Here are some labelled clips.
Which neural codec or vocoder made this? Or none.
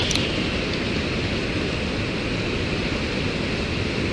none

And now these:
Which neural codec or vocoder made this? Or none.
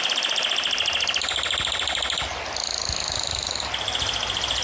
none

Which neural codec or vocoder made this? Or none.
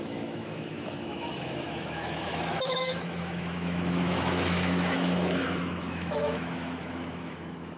autoencoder, DAC-VAE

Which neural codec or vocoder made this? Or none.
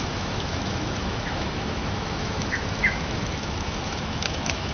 autoencoder, DAC-VAE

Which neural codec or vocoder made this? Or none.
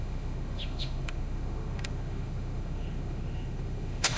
autoencoder, DAC-VAE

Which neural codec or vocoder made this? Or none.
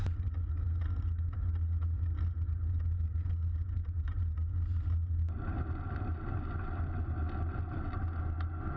none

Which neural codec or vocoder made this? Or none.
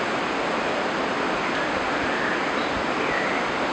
none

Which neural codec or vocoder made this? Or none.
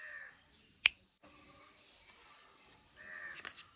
none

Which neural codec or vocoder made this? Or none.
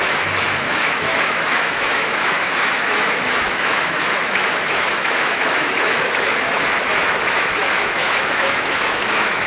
autoencoder, DAC-VAE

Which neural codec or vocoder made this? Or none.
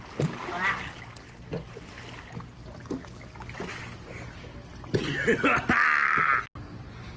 none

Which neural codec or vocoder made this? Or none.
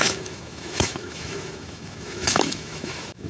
autoencoder, DAC-VAE